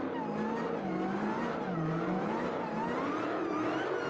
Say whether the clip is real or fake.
real